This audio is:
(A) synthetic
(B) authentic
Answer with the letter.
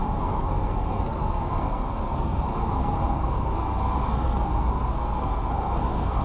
A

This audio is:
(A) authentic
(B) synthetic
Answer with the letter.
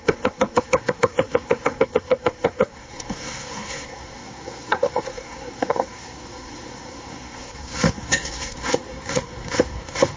B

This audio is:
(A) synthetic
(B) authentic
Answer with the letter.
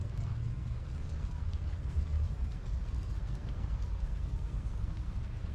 A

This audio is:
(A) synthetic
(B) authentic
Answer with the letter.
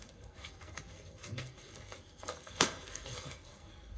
A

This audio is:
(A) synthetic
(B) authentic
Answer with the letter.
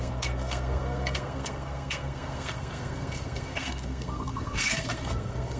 A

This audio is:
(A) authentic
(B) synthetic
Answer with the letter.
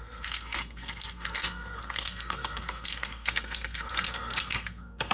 B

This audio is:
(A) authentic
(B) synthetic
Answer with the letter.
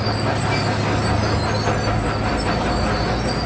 A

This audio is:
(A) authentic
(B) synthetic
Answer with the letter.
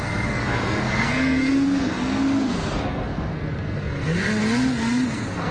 B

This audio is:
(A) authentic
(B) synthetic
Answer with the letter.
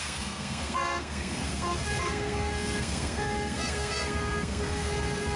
B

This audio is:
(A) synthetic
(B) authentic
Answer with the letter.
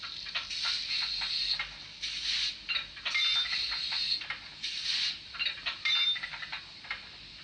B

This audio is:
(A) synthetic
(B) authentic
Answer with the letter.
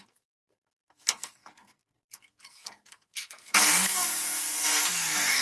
A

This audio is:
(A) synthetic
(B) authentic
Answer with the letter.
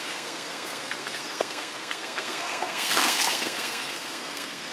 A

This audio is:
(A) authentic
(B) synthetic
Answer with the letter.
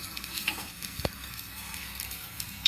B